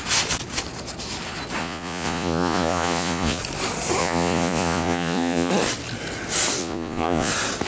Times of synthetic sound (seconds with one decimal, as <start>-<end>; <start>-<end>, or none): 1.6-3.4; 4.0-5.5; 6.6-7.3